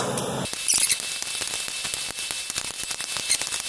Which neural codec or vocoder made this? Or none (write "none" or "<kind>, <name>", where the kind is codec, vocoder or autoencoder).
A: none